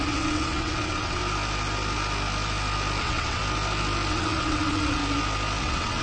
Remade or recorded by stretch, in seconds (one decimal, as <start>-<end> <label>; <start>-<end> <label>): 0.0-1.2 remade; 1.2-3.0 recorded; 3.0-3.4 remade; 3.4-4.1 recorded; 4.1-5.0 remade; 5.0-5.6 recorded; 5.6-6.0 remade